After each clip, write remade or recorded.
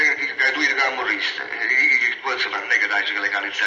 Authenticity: recorded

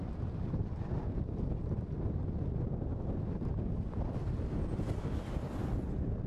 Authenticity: recorded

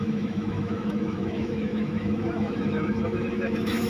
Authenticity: remade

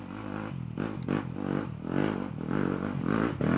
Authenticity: recorded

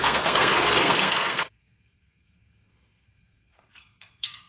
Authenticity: remade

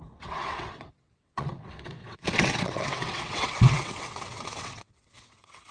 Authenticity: remade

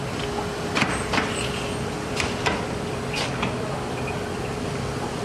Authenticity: recorded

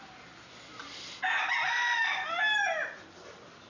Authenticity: recorded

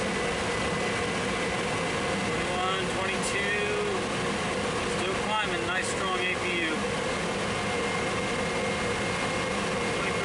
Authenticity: recorded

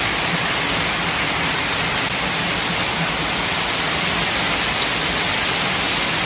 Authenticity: recorded